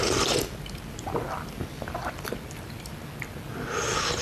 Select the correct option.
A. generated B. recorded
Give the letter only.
B